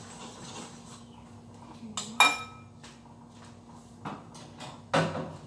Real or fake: real